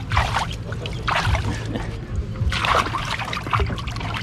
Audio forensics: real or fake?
real